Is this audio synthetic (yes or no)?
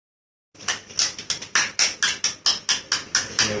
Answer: no